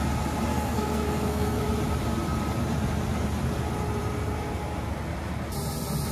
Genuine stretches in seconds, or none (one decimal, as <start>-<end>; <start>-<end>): 0.0-0.5; 1.6-6.1